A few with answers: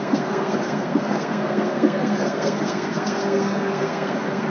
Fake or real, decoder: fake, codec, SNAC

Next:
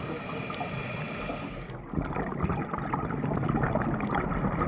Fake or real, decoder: real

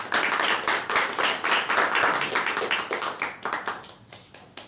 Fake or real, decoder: real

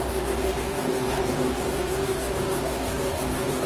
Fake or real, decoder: fake, codec, DAC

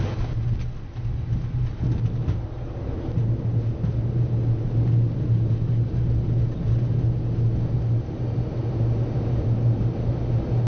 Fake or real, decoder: real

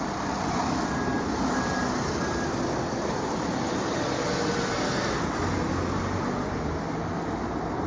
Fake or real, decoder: real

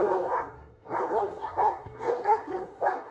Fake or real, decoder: fake, codec, SNAC